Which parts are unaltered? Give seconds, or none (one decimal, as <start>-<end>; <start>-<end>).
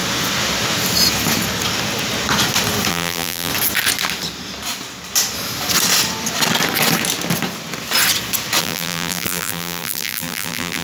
0.0-2.9; 3.5-8.6